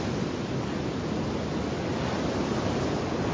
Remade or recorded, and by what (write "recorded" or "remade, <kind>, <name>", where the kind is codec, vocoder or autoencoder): recorded